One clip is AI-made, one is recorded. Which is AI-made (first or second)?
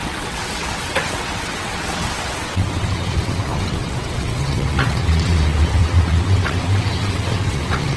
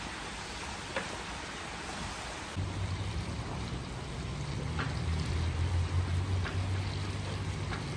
first